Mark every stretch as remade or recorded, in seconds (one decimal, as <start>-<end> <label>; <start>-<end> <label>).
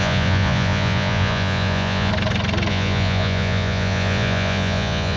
0.0-2.1 remade; 2.1-2.7 recorded; 2.7-5.2 remade